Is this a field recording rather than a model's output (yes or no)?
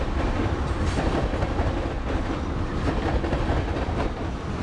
yes